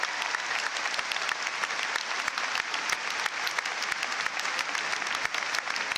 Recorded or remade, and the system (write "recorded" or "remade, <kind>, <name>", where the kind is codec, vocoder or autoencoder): recorded